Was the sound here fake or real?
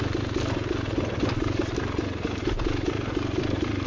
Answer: real